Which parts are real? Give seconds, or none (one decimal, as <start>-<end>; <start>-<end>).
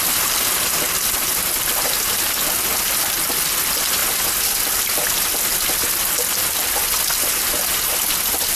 0.0-8.6